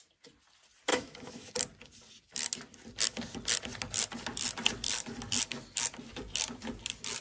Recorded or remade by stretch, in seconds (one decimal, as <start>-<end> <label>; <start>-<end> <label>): 0.0-0.9 recorded; 0.9-1.5 remade; 1.5-7.2 recorded